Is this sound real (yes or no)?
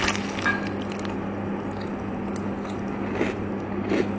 yes